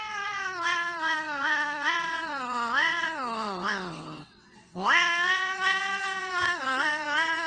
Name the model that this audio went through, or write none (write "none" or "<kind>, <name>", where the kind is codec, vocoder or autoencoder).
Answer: vocoder, WaveNeXt